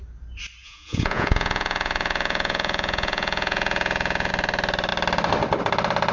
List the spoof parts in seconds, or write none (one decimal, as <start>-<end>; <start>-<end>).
0.6-4.3